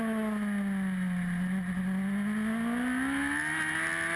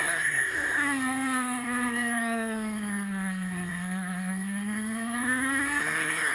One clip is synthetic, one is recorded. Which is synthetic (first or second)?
second